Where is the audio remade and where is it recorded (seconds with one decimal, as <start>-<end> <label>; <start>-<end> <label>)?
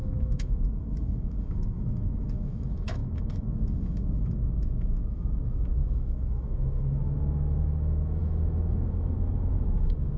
0.0-10.2 remade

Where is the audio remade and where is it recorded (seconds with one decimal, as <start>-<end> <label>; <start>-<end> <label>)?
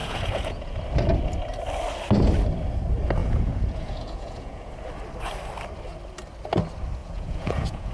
0.0-0.7 remade; 0.7-3.2 recorded; 3.2-4.7 remade; 4.7-7.0 recorded; 7.0-7.9 remade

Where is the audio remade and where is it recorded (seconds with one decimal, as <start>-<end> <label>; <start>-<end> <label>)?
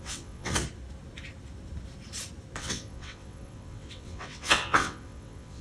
0.0-0.6 remade; 0.6-2.6 recorded; 2.6-5.6 remade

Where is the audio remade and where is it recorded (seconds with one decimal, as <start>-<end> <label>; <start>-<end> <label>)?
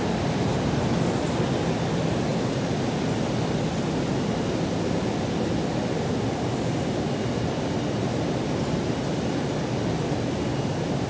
0.0-11.1 recorded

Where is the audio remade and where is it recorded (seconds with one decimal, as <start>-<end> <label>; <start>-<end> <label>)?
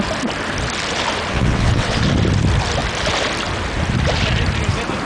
0.0-1.3 recorded; 1.3-2.0 remade; 2.0-5.1 recorded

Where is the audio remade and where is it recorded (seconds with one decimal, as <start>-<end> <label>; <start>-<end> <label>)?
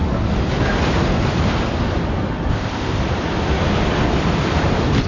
0.0-2.5 recorded; 2.5-3.0 remade; 3.0-5.1 recorded